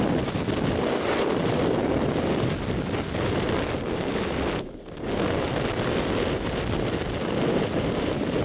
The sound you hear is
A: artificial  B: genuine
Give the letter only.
B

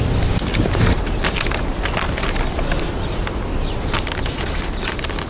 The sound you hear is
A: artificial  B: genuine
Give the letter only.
B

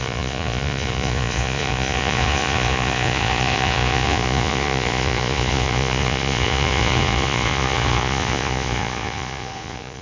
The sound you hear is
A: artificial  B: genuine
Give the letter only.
A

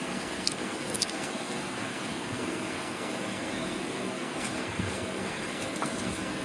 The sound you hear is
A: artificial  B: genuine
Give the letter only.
A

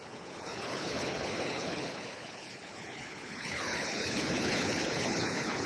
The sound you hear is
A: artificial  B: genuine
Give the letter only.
A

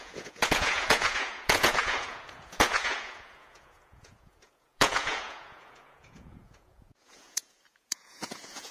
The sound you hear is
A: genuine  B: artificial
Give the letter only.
B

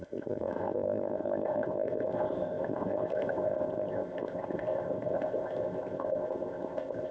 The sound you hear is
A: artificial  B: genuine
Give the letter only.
A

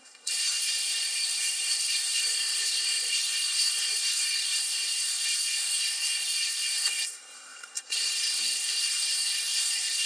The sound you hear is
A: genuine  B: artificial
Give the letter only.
B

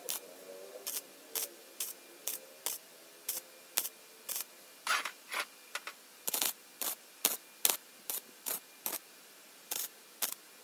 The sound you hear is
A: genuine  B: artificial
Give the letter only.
A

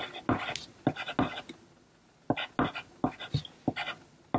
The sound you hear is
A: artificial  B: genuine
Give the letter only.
B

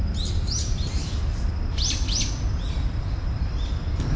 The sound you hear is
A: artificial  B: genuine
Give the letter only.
B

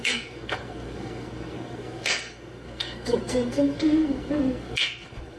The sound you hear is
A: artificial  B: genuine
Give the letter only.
A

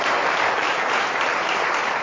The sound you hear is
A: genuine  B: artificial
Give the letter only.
B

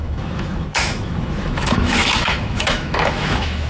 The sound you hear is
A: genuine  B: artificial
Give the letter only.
B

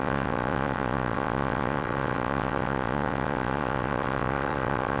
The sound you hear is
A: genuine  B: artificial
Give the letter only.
B